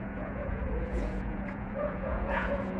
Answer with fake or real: fake